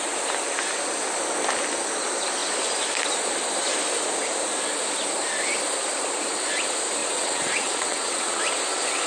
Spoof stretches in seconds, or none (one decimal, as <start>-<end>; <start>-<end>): 7.0-8.4